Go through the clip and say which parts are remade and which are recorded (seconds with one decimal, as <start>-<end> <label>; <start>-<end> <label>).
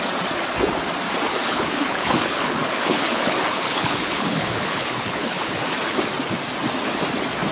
0.0-1.3 recorded; 1.3-5.5 remade; 5.5-7.5 recorded